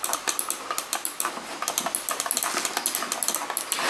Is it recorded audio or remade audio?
recorded